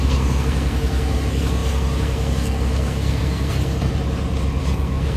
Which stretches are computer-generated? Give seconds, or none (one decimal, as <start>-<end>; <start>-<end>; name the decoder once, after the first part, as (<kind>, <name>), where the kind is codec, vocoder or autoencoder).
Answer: 0.0-3.9 (codec, SNAC); 4.6-5.2